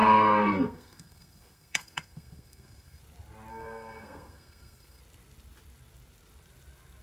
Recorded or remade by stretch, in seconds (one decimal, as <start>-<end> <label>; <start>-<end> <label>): 0.0-3.0 remade; 3.0-3.5 recorded; 3.5-5.0 remade; 5.0-7.0 recorded